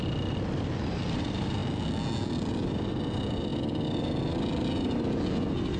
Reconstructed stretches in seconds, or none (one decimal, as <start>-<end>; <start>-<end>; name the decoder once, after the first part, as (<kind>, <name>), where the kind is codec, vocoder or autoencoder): none